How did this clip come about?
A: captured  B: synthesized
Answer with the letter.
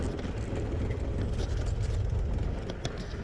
A